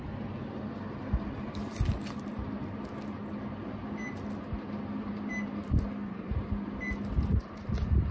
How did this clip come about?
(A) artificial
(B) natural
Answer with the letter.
B